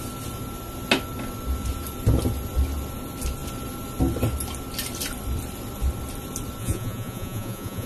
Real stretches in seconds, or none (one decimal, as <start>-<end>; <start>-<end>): 0.0-6.6